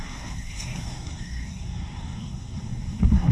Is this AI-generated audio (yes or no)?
yes